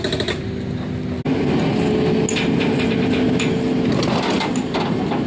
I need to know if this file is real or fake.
real